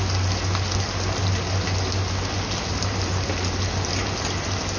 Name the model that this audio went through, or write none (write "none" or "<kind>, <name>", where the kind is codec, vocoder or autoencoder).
none